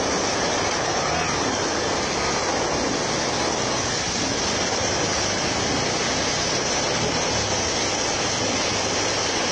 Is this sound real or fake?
real